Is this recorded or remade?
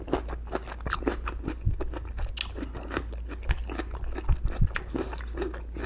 recorded